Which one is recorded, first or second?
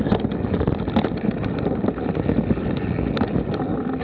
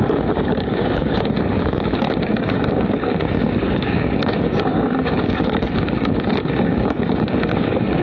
first